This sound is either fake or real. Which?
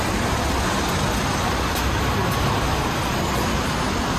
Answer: real